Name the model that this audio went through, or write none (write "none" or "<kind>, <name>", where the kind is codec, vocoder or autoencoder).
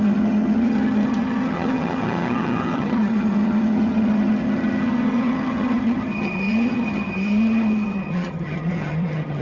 vocoder, HiFi-GAN